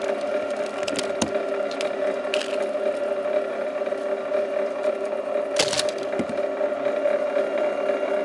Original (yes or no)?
yes